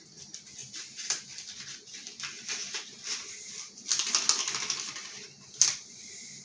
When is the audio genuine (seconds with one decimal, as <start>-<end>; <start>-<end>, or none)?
0.0-6.4